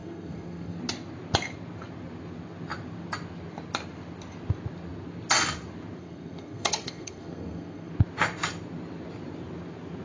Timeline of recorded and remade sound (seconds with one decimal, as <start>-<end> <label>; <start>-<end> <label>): 0.0-0.8 remade; 0.8-6.0 recorded; 6.0-7.9 remade; 7.9-10.0 recorded